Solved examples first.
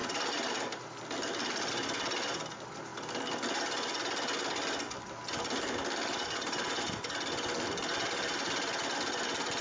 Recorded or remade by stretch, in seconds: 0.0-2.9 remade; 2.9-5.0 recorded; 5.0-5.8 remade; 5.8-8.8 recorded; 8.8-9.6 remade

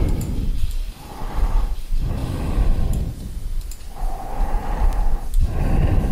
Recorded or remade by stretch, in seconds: 0.0-2.2 remade; 2.2-6.1 recorded

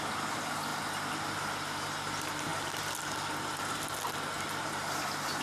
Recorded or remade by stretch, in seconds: 0.0-5.4 recorded

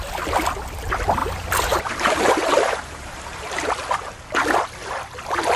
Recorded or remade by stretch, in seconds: 0.0-1.2 recorded; 1.2-3.7 remade; 3.7-5.6 recorded

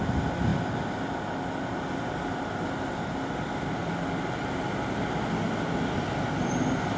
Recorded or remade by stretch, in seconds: 0.0-7.0 recorded